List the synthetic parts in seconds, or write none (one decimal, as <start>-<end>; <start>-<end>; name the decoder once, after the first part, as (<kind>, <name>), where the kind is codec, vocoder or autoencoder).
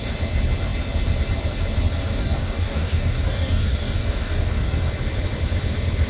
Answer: 2.2-4.8 (codec, DAC)